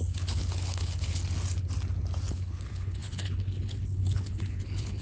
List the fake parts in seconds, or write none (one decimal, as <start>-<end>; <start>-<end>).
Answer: 0.0-1.2; 2.3-5.0